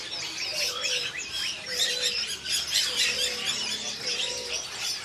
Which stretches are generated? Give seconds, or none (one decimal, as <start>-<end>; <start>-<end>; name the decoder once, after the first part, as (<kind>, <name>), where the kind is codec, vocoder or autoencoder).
none